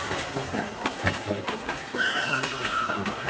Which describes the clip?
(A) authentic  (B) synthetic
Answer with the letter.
B